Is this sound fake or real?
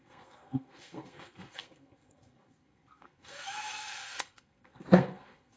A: fake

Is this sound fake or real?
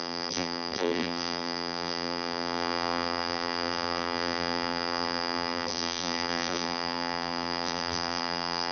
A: fake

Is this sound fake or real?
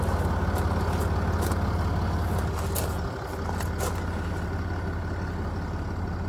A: real